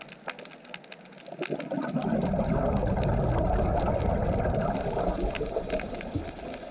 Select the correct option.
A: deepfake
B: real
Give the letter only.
B